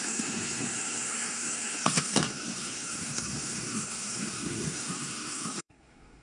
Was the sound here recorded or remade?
remade